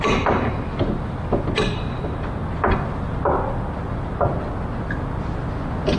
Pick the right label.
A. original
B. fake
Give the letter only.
A